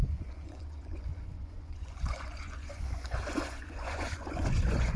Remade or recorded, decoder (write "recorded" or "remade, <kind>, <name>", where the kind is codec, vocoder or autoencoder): remade, vocoder, Vocos